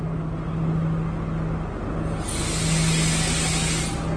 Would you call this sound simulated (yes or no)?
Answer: no